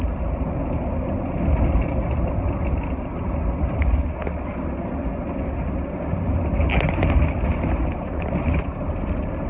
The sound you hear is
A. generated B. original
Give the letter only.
B